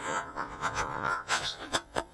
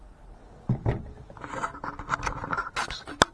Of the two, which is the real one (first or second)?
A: second